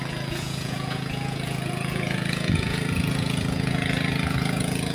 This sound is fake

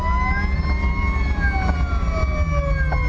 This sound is real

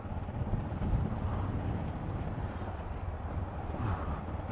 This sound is real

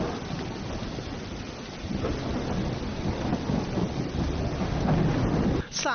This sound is real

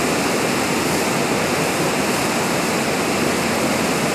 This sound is real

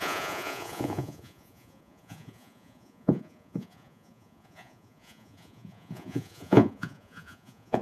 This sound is fake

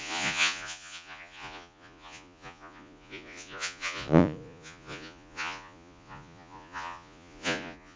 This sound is fake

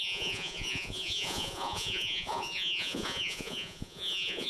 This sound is fake